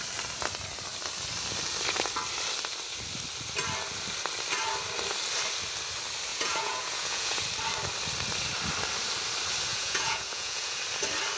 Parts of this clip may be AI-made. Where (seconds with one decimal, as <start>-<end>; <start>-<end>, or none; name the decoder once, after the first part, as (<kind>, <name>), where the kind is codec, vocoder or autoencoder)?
6.3-7.4 (vocoder, Vocos); 9.7-10.8